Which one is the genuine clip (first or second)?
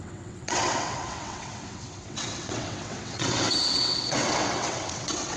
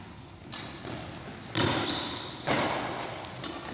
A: second